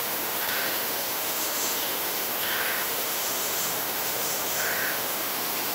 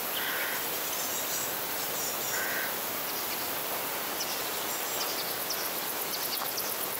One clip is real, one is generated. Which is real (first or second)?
second